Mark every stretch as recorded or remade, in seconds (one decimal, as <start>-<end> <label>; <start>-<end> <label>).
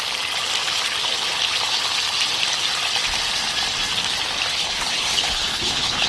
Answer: 0.0-4.5 recorded; 4.5-6.1 remade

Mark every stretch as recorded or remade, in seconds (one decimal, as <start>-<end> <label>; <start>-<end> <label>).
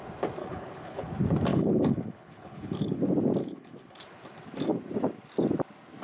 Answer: 0.0-0.4 recorded; 0.4-1.1 remade; 1.1-1.5 recorded; 1.5-3.0 remade; 3.0-3.4 recorded; 3.4-4.0 remade; 4.0-6.0 recorded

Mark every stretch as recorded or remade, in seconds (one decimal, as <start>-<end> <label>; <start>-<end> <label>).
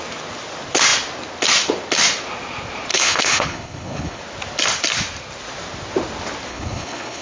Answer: 0.0-2.9 recorded; 2.9-4.2 remade; 4.2-6.5 recorded; 6.5-7.2 remade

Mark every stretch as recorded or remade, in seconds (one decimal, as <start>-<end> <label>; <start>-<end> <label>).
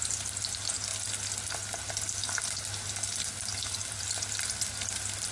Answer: 0.0-5.3 recorded